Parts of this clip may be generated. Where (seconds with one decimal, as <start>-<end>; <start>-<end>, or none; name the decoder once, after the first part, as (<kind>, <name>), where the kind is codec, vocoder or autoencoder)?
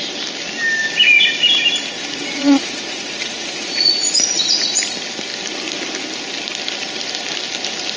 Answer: 2.2-4.8 (vocoder, Vocos)